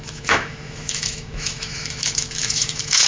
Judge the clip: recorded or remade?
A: remade